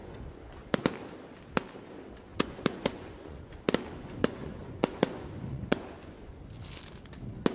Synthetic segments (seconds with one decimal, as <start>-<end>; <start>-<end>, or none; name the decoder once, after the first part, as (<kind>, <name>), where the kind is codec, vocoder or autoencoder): 0.0-0.9 (vocoder, Vocos); 2.3-3.6; 4.0-6.5